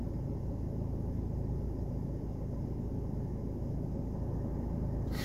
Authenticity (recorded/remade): recorded